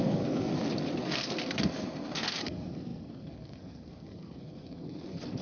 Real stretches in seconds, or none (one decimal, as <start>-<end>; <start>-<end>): 0.5-1.0